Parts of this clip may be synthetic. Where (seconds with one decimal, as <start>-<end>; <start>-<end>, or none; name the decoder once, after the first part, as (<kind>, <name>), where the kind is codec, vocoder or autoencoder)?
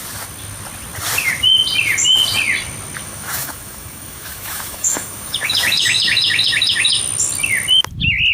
3.0-7.0 (autoencoder, DAC-VAE)